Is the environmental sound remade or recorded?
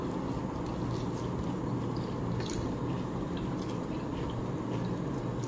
recorded